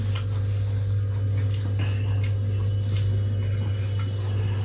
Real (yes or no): yes